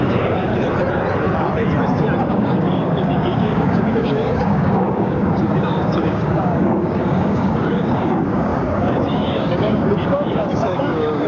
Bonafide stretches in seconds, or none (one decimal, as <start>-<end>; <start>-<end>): 0.5-2.3